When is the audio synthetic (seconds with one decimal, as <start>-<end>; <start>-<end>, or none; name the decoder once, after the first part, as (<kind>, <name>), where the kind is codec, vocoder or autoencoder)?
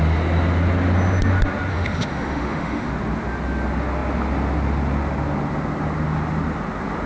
1.7-2.9 (autoencoder, DAC-VAE)